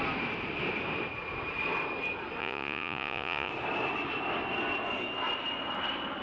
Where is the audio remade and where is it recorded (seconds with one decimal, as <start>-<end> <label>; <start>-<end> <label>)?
0.0-2.4 recorded; 2.4-3.5 remade; 3.5-6.2 recorded